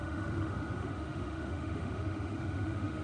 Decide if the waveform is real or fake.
fake